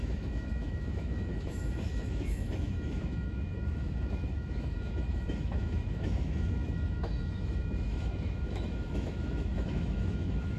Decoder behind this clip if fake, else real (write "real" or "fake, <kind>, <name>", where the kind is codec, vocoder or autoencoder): fake, autoencoder, DAC-VAE